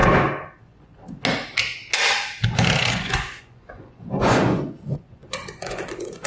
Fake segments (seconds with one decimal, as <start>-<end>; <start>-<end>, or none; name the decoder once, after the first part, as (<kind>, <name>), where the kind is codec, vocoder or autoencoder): 0.6-1.0 (vocoder, Vocos); 2.9-6.3